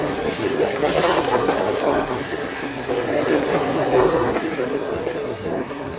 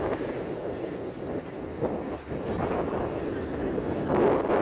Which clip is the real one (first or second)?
second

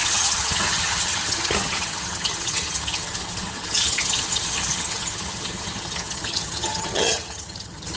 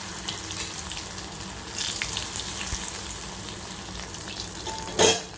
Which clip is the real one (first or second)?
second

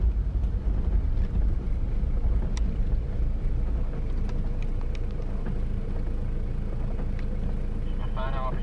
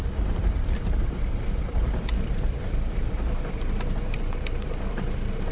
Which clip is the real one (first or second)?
first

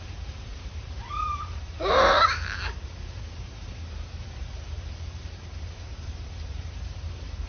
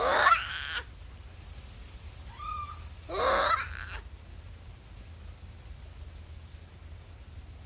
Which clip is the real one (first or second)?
second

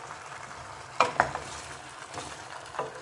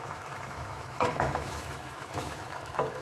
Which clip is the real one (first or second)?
first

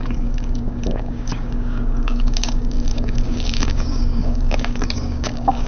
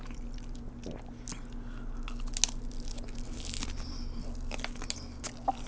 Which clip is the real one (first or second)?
second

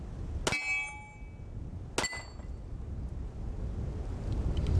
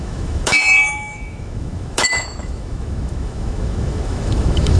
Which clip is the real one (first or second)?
first